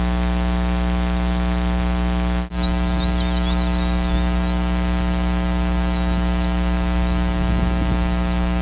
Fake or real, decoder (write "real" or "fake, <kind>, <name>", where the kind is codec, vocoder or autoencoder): real